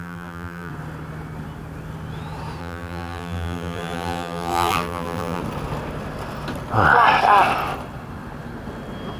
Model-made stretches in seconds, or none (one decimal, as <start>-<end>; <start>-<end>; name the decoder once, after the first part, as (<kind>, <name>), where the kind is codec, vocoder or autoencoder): 0.0-0.7 (vocoder, BigVGAN v2); 2.6-5.4